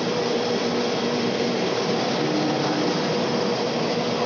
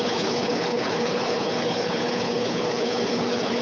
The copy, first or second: second